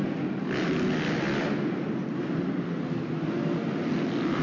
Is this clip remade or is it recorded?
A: recorded